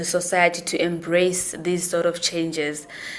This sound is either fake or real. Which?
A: real